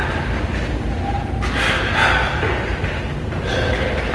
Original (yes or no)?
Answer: yes